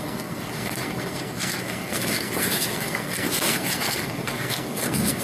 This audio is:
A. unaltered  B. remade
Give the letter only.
B